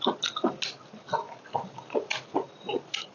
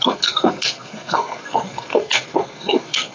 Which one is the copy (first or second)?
second